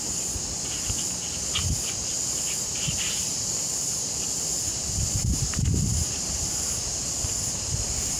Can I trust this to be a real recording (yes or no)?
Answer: yes